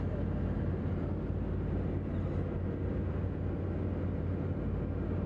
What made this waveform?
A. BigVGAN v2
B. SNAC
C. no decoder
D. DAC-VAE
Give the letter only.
C